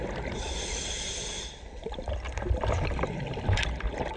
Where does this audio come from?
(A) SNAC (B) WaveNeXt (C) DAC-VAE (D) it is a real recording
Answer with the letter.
D